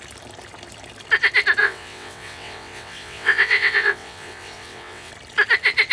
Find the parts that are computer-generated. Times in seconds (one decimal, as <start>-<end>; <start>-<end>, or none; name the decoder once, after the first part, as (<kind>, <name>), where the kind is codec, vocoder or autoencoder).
1.6-5.1 (vocoder, WaveNeXt)